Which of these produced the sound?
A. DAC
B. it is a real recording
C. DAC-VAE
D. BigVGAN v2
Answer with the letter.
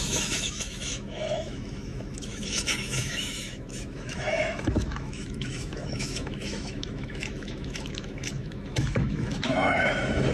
C